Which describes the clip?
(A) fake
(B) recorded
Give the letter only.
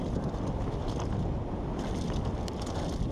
B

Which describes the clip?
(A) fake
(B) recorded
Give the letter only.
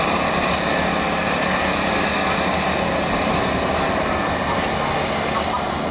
B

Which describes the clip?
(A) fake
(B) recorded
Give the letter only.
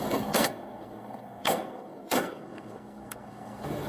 A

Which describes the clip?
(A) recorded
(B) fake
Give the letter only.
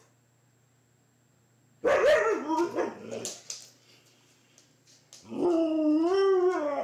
A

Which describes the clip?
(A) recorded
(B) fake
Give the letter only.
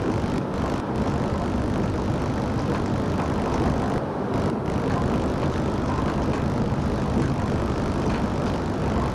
A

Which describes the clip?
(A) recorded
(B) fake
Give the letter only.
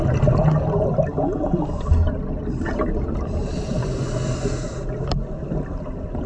A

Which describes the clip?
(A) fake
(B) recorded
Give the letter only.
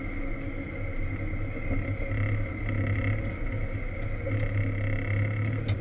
B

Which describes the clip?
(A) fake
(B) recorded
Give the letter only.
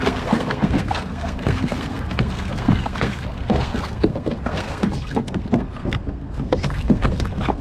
A